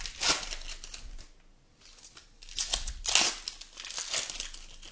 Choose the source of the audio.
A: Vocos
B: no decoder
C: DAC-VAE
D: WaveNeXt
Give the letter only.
B